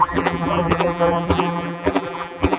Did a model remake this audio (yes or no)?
yes